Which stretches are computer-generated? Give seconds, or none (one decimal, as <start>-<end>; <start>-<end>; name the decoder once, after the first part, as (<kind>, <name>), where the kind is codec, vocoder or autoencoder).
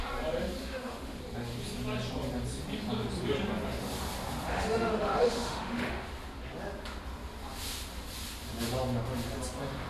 0.6-1.2 (autoencoder, DAC-VAE); 4.5-6.1